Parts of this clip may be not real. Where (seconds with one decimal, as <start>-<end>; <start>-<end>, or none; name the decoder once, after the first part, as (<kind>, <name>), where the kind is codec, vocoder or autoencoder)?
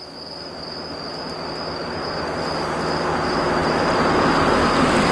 1.8-3.0 (vocoder, BigVGAN v2); 3.6-4.3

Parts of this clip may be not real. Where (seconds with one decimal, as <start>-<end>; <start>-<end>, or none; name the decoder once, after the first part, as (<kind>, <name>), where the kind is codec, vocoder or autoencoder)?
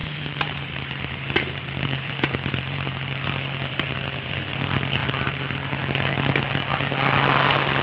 0.0-4.6 (vocoder, BigVGAN v2); 5.0-6.4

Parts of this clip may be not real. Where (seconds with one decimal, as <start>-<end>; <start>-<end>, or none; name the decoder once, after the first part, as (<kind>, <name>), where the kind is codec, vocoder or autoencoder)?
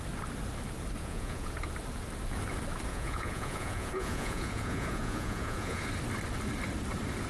1.0-1.5 (vocoder, Vocos); 2.9-5.9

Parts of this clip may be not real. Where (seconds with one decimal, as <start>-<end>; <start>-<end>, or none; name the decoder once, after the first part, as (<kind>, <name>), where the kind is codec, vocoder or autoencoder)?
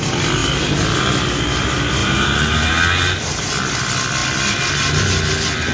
2.0-2.7 (vocoder, BigVGAN v2)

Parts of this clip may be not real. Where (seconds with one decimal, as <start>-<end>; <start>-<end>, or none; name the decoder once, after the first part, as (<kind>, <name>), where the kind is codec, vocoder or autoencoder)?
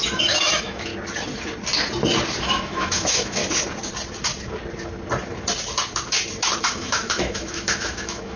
0.0-0.9 (autoencoder, DAC-VAE); 2.4-3.4; 6.6-8.4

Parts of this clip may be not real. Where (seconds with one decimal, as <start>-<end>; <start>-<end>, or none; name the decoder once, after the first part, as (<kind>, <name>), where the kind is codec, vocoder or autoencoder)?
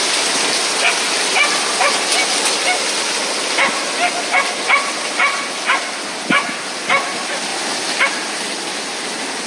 none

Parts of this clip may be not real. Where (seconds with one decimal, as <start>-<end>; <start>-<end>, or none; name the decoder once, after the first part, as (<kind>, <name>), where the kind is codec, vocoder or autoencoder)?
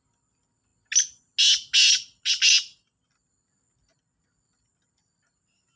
none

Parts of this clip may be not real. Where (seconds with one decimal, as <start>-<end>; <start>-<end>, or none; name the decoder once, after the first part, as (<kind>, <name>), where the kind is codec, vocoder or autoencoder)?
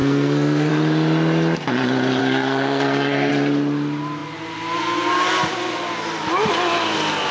0.0-0.7 (codec, SNAC); 2.2-3.3